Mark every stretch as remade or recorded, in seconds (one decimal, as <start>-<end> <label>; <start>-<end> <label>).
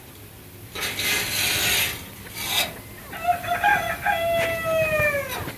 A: 0.0-5.6 recorded